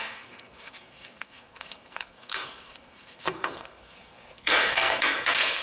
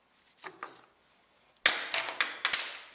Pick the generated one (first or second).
first